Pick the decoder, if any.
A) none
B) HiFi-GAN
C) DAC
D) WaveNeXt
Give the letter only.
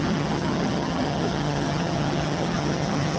B